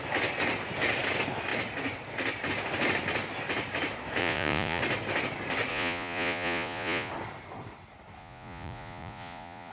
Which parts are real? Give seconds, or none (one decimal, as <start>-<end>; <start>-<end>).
0.0-4.2; 4.8-5.7; 7.1-8.2

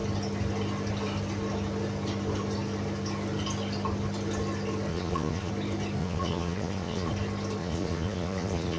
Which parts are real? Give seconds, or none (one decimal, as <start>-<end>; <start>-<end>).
0.0-4.9; 5.5-6.0; 7.1-7.6